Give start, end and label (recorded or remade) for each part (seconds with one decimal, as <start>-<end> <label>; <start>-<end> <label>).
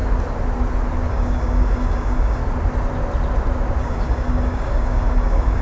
0.0-1.1 recorded; 1.1-2.4 remade; 2.4-3.8 recorded; 3.8-5.6 remade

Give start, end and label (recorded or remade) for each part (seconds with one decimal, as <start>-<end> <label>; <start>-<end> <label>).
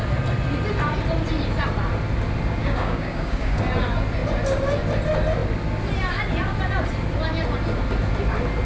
0.0-2.6 recorded; 2.6-3.6 remade; 3.6-8.7 recorded